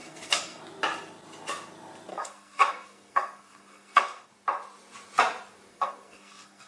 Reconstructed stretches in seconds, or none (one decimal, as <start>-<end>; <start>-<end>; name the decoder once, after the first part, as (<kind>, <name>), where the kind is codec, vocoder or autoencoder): 0.0-0.6 (codec, SNAC); 2.1-4.3; 5.7-6.7